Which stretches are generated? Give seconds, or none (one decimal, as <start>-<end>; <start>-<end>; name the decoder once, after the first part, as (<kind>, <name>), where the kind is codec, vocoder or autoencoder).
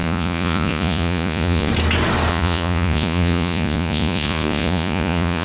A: 0.0-1.7 (vocoder, Vocos); 2.3-5.4